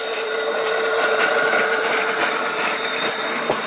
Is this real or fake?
fake